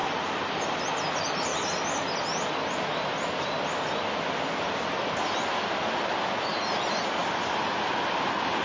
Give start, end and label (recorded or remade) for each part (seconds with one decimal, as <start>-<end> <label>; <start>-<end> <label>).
0.0-0.5 remade; 0.5-8.6 recorded